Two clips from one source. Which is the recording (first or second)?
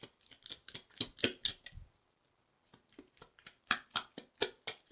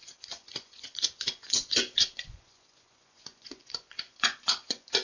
first